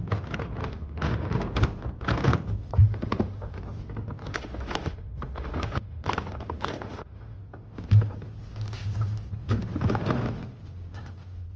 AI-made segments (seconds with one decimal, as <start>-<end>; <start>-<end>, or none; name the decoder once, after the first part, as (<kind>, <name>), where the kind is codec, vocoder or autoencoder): 0.6-1.3 (autoencoder, DAC-VAE); 2.8-3.6; 4.2-7.4